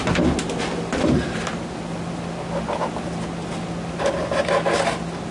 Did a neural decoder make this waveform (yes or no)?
no